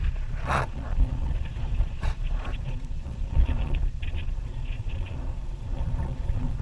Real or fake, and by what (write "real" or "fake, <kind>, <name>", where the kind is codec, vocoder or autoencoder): fake, vocoder, Vocos